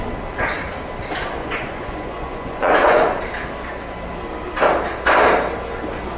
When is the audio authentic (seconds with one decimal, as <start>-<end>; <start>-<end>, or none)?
0.0-1.4; 3.2-6.2